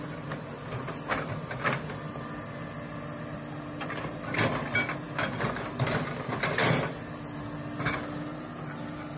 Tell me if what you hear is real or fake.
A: real